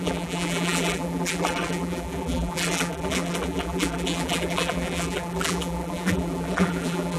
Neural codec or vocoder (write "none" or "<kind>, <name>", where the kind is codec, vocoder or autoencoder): vocoder, BigVGAN v2